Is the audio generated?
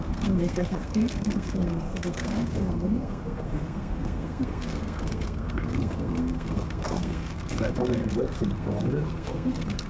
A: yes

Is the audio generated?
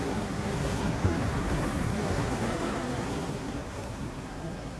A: yes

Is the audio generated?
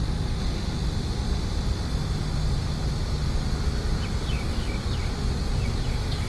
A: no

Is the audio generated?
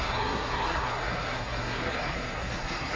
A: yes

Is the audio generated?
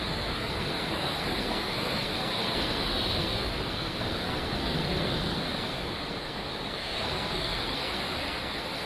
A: yes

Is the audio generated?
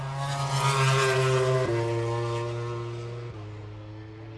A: no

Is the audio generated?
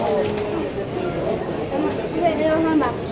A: no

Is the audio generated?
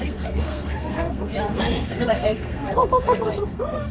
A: yes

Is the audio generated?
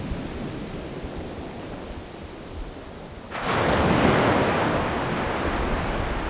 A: no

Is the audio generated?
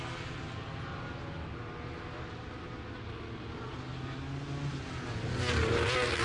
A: no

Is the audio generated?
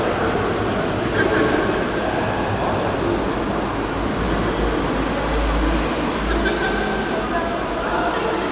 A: no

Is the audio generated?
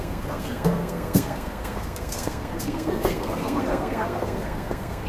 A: yes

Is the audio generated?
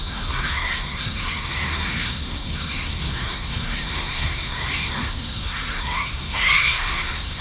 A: yes